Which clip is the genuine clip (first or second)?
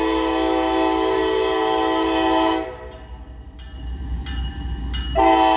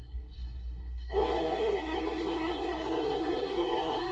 first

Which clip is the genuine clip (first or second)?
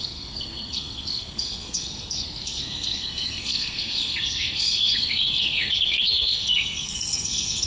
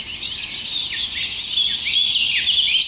second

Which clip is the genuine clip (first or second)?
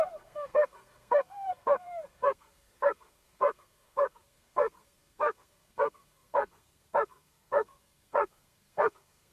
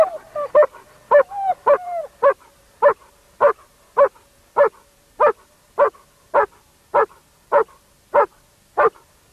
second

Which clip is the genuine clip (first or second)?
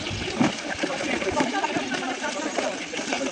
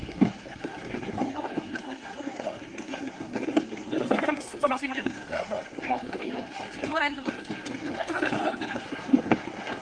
first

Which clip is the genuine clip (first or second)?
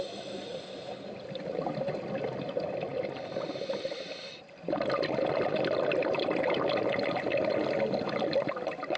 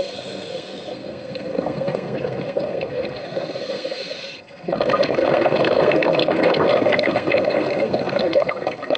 first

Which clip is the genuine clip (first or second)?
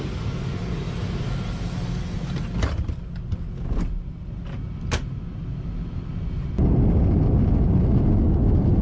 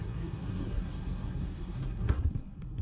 first